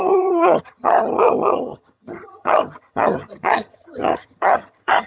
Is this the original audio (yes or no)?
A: no